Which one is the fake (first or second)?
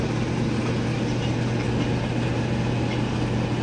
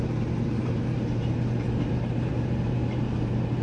second